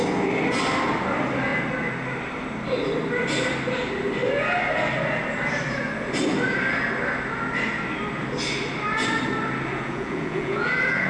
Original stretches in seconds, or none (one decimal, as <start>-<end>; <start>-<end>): 0.0-9.7